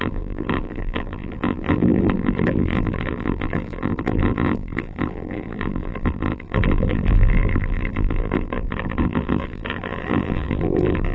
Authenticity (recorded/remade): remade